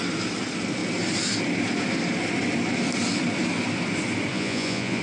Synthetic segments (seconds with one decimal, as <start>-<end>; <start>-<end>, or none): 4.3-5.0